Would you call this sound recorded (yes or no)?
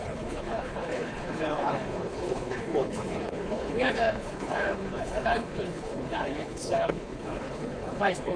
no